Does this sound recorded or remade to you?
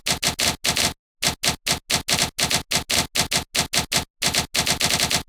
recorded